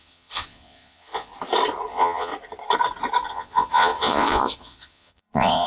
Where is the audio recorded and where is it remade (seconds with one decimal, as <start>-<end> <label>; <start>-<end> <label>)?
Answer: 0.0-1.3 remade; 1.3-1.9 recorded; 1.9-2.3 remade; 2.3-3.3 recorded; 3.3-5.7 remade